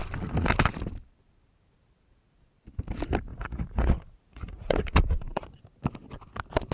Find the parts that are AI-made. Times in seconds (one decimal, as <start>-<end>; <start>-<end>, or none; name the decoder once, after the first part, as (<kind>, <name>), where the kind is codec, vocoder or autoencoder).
3.3-5.6 (vocoder, Vocos)